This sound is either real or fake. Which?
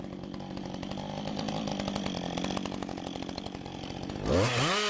real